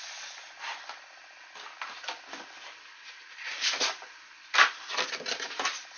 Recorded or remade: recorded